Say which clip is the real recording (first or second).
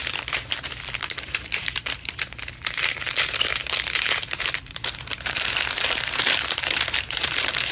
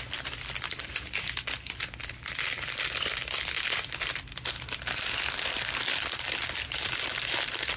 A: second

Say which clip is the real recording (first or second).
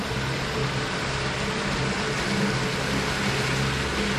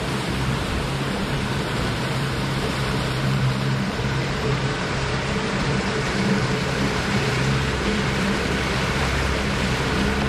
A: first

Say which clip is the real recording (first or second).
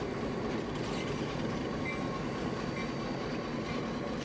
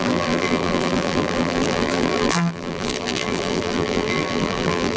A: first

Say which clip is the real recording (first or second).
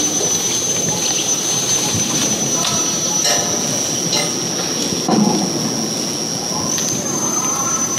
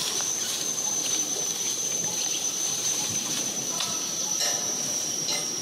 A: first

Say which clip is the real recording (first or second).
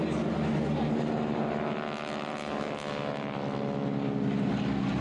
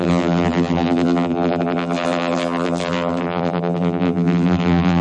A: first